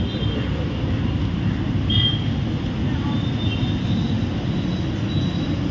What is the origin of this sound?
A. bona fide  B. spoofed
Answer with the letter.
A